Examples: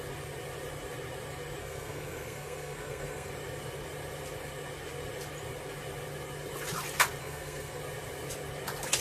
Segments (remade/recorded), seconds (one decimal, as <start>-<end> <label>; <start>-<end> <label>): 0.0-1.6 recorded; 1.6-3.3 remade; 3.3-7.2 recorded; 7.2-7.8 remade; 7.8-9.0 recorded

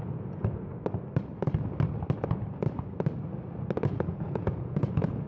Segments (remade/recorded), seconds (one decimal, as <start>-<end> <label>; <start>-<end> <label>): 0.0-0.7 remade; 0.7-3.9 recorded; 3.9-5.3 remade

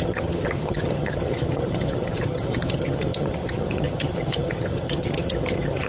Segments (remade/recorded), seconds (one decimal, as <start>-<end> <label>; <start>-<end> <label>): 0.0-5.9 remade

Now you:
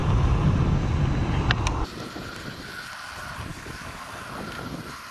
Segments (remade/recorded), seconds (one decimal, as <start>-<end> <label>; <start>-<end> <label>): 0.0-3.5 recorded; 3.5-4.2 remade; 4.2-5.1 recorded